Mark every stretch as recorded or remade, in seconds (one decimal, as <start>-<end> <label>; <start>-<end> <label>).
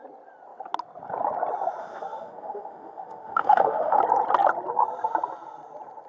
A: 0.0-1.8 recorded; 1.8-4.0 remade; 4.0-6.1 recorded